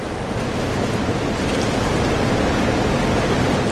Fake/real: real